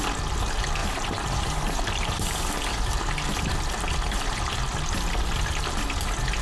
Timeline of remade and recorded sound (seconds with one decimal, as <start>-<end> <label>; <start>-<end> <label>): 0.0-0.8 recorded; 0.8-2.5 remade; 2.5-6.4 recorded